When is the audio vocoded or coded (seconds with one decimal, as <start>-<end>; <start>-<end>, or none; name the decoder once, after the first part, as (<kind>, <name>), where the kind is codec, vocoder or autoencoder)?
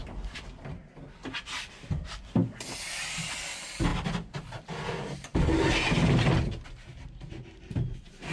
none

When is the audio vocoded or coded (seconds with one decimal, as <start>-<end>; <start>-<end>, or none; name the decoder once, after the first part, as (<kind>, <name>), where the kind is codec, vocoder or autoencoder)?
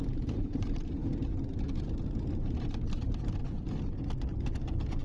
0.0-1.0 (vocoder, BigVGAN v2); 2.3-3.4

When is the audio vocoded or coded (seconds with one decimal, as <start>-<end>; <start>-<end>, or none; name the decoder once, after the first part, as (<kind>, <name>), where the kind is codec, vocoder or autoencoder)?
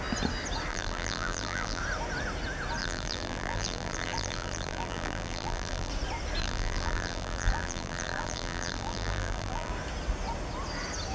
0.7-1.8 (vocoder, BigVGAN v2); 2.8-5.9; 6.4-9.7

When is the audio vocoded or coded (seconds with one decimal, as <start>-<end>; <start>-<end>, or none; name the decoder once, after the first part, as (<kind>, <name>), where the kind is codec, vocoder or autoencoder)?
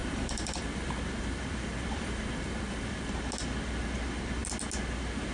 0.0-3.2 (vocoder, BigVGAN v2)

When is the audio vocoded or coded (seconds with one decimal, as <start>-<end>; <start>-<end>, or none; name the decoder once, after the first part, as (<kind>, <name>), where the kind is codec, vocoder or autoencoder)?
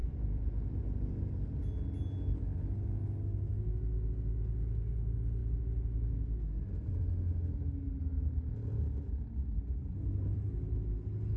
0.0-1.1 (vocoder, BigVGAN v2)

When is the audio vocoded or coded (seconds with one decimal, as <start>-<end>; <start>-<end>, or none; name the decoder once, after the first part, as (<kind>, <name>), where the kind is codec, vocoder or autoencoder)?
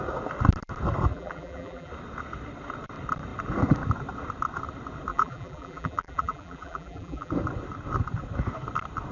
1.1-1.9 (vocoder, BigVGAN v2); 5.1-7.3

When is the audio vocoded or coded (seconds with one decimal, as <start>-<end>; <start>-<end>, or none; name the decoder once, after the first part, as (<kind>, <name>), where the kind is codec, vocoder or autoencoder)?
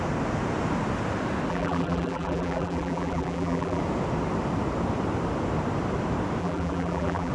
1.5-3.8 (vocoder, BigVGAN v2); 6.4-7.3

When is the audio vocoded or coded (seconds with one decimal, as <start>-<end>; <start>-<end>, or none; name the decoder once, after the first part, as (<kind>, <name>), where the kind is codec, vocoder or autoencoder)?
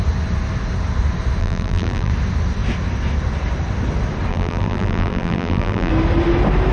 1.4-2.1 (vocoder, BigVGAN v2); 4.3-5.9